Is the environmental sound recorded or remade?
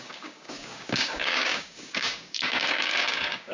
remade